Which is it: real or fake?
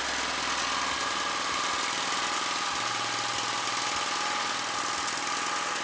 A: real